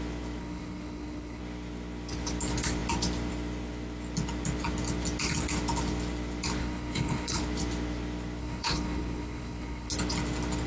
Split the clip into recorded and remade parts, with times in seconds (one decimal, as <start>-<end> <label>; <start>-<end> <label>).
0.0-0.4 recorded; 0.4-1.4 remade; 1.4-6.6 recorded; 6.6-7.4 remade; 7.4-8.4 recorded; 8.4-9.9 remade; 9.9-10.7 recorded